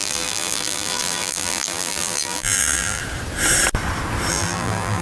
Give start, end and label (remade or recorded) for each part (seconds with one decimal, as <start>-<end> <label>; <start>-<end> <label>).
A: 0.0-3.0 remade; 3.0-4.3 recorded; 4.3-5.0 remade